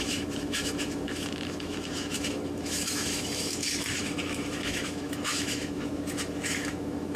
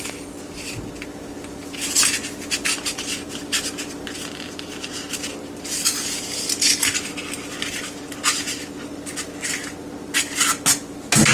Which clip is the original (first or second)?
second